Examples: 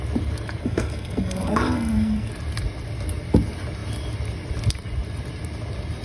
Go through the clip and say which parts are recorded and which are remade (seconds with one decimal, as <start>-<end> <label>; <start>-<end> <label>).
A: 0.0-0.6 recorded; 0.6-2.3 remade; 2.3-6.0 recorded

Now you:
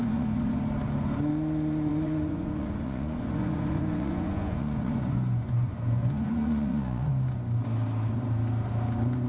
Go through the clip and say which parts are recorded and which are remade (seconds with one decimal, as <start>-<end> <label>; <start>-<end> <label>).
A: 0.0-0.6 remade; 0.6-1.9 recorded; 1.9-7.1 remade; 7.1-9.3 recorded

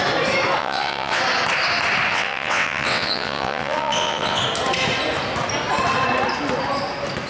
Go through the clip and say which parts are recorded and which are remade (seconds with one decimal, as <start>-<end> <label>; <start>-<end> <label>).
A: 0.0-0.6 recorded; 0.6-1.2 remade; 1.2-2.1 recorded; 2.1-4.4 remade; 4.4-7.3 recorded